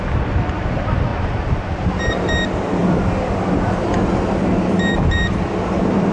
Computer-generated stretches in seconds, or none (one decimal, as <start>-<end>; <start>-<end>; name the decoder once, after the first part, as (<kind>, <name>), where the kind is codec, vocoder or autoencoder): none